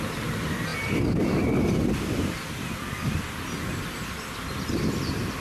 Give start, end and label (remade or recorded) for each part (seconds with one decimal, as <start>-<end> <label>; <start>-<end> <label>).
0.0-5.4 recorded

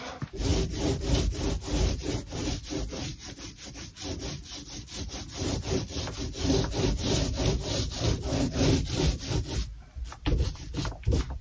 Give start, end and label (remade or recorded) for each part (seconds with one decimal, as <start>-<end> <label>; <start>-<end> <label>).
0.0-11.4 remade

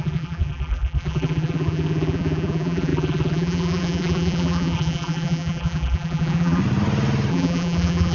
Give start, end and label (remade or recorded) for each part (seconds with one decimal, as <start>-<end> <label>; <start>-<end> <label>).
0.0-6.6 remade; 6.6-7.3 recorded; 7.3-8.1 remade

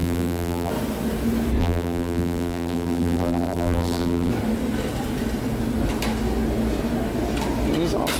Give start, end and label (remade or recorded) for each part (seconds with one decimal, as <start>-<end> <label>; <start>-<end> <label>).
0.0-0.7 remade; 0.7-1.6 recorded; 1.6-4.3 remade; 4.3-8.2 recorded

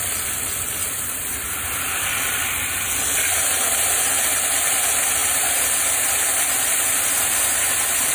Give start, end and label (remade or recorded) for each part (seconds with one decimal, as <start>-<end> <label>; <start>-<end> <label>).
0.0-0.8 recorded; 0.8-2.9 remade; 2.9-8.1 recorded

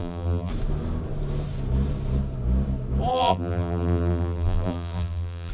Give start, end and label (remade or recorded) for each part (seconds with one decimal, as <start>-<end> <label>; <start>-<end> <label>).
0.0-0.5 remade; 0.5-3.1 recorded; 3.1-5.5 remade

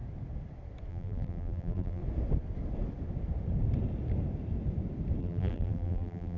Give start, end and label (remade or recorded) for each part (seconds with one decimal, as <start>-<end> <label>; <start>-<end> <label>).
0.0-0.9 recorded; 0.9-2.0 remade; 2.0-5.2 recorded; 5.2-6.4 remade